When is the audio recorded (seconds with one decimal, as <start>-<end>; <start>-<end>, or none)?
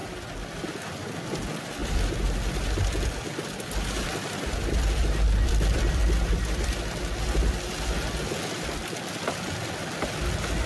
0.0-1.8; 7.0-10.7